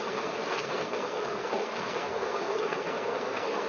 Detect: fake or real fake